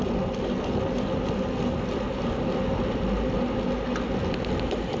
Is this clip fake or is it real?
real